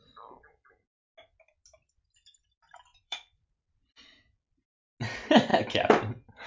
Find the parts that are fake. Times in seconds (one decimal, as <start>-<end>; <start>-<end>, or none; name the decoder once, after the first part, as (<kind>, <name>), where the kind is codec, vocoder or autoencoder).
2.9-3.9 (vocoder, BigVGAN v2); 5.5-6.5